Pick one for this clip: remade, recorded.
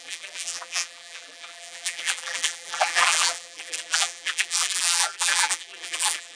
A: remade